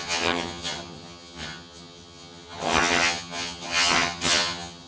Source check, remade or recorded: remade